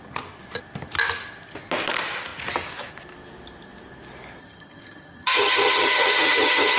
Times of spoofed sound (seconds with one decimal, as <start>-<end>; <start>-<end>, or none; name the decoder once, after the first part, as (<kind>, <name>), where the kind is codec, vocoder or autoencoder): 4.4-6.8 (vocoder, HiFi-GAN)

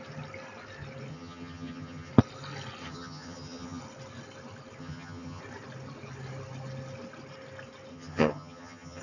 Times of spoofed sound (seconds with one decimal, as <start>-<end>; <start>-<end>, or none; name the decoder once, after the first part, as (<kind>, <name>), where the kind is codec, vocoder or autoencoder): 1.1-2.1 (vocoder, HiFi-GAN); 2.8-3.8; 4.8-5.4; 7.9-9.0

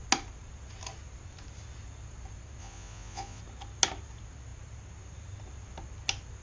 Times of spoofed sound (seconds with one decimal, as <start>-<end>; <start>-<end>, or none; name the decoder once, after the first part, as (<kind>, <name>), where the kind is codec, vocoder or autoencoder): 2.6-3.4 (vocoder, Vocos)

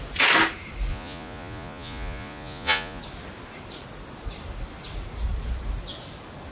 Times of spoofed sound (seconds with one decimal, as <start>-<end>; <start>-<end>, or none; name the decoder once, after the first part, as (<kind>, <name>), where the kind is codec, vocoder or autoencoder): 0.9-3.0 (vocoder, Vocos)

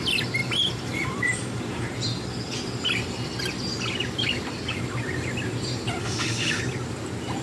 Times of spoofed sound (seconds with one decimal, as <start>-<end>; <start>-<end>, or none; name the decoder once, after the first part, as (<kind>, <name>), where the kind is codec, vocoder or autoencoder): 6.0-6.6 (autoencoder, DAC-VAE)

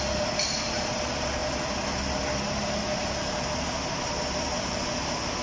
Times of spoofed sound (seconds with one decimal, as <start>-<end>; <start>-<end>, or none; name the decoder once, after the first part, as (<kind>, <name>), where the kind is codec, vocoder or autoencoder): none